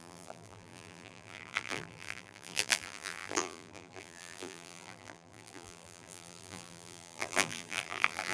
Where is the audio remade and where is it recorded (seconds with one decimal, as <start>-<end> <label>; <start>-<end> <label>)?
0.0-8.3 remade